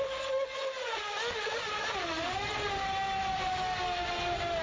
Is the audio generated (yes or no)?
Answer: no